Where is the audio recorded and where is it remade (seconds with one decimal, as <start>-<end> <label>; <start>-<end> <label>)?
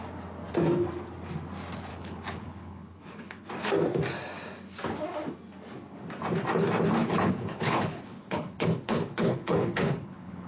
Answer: 0.0-1.9 recorded; 1.9-3.5 remade; 3.5-7.0 recorded; 7.0-10.5 remade